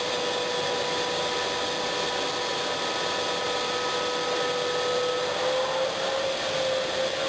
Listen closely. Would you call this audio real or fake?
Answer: real